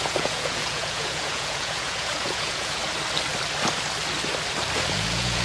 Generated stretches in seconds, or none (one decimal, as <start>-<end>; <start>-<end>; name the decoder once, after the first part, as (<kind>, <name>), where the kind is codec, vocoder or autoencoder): 0.0-2.8 (vocoder, Vocos); 4.9-5.4